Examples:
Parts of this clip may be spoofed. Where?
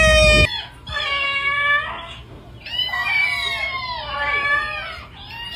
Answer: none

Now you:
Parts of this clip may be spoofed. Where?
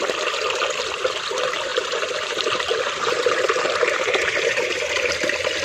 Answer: 1.7-5.1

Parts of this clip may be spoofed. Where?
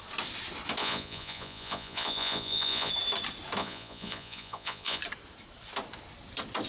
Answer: 0.8-2.9; 3.6-5.0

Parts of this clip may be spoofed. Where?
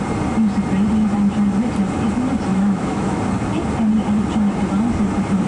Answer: 2.5-3.2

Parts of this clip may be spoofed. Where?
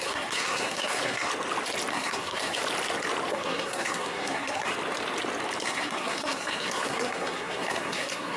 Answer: 0.0-1.3; 1.9-2.6; 3.3-4.7; 5.6-8.4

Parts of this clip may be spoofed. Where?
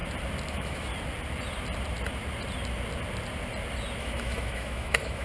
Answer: 0.5-0.9; 4.0-5.2